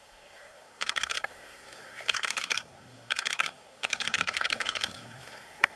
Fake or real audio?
fake